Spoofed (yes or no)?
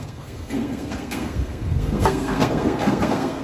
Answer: yes